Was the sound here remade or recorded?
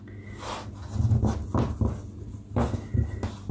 recorded